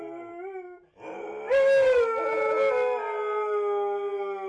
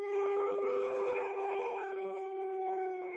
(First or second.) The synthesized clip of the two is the second